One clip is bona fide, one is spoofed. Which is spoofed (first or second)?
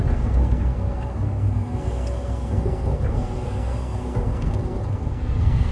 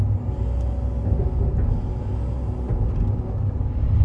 first